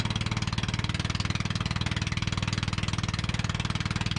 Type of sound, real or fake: real